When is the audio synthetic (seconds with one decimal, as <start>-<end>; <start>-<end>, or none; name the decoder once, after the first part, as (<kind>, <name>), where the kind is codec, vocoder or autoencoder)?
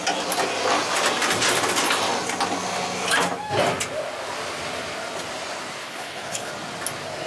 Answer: 5.8-6.5 (codec, HILCodec)